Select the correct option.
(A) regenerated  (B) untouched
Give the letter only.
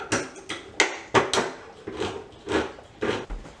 B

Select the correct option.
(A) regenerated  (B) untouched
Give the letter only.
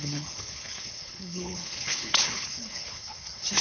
A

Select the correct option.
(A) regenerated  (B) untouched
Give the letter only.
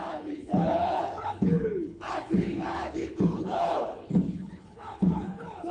A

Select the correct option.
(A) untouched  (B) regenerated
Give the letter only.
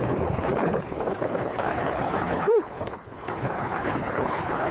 B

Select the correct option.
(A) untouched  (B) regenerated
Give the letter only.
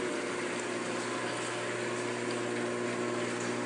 A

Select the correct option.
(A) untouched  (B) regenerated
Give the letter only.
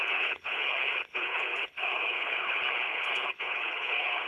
B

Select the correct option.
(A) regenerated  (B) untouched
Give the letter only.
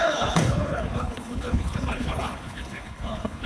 A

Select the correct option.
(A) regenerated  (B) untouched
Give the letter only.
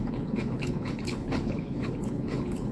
A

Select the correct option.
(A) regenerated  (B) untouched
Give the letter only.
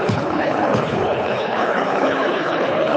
A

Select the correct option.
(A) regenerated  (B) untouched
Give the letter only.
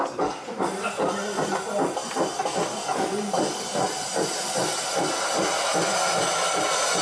B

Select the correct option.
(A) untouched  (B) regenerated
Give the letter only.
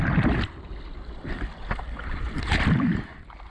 A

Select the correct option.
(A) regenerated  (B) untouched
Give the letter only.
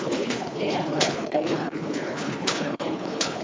A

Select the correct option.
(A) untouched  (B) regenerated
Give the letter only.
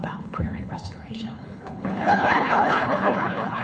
B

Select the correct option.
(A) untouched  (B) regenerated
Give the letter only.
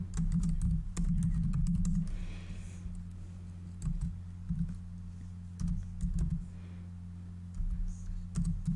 A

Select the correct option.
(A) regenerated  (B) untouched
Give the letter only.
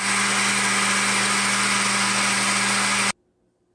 B